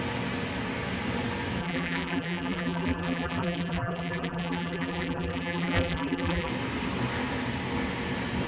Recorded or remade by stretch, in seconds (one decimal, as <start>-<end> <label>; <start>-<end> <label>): 0.0-1.6 recorded; 1.6-6.5 remade; 6.5-8.5 recorded